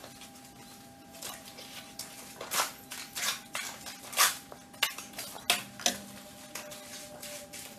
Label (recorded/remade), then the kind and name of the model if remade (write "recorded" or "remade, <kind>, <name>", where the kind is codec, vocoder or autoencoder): recorded